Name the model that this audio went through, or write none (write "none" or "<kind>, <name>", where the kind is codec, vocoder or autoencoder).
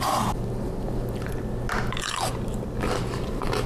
none